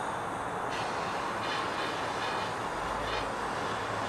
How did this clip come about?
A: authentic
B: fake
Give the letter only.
A